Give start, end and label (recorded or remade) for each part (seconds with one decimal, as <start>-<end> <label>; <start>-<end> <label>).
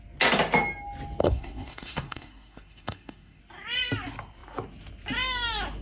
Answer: 0.0-1.2 recorded; 1.2-3.4 remade; 3.4-5.8 recorded